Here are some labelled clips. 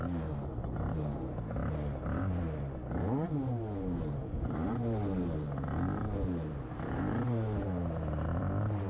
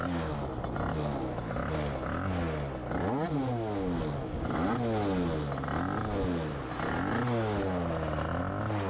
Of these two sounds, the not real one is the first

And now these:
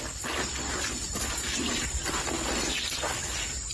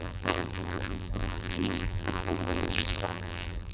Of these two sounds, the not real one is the second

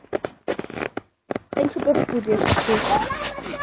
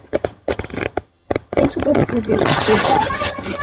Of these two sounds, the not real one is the second